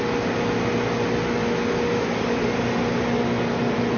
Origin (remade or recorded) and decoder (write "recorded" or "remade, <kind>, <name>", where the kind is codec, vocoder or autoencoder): recorded